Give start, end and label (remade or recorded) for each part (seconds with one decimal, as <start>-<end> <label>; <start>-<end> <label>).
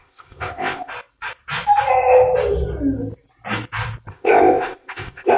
0.0-0.9 remade; 0.9-4.1 recorded; 4.1-5.4 remade